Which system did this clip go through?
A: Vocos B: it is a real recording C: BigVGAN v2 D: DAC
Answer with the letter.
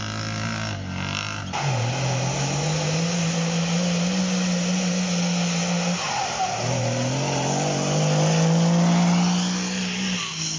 B